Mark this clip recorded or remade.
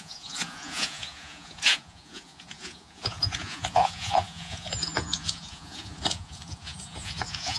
remade